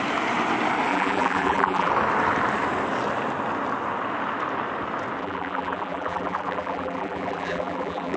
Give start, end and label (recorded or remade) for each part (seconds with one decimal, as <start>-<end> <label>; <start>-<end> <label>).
0.0-0.9 recorded; 0.9-1.9 remade; 1.9-5.2 recorded; 5.2-8.2 remade